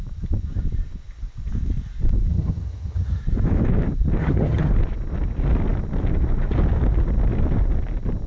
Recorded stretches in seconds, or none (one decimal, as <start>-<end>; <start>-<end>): 0.0-2.3; 3.2-4.2; 4.7-8.3